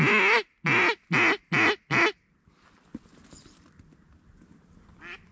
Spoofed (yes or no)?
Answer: no